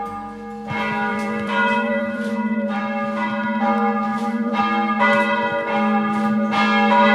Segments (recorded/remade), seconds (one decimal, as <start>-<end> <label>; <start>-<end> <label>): 0.0-1.1 recorded; 1.1-2.8 remade; 2.8-4.1 recorded; 4.1-4.6 remade; 4.6-7.1 recorded